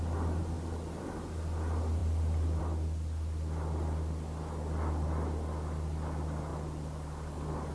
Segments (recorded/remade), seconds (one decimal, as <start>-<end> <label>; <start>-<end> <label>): 0.0-0.4 recorded; 0.4-0.9 remade; 0.9-6.5 recorded; 6.5-7.7 remade